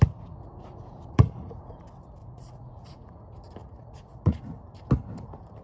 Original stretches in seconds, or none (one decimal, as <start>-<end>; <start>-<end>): 0.0-0.4; 1.8-2.2; 3.1-3.6; 4.5-5.6